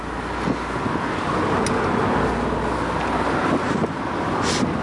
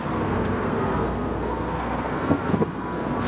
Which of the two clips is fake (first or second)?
second